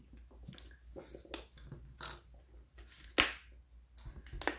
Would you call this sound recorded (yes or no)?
yes